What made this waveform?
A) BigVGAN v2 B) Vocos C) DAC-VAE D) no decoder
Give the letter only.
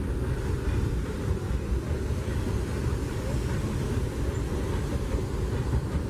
D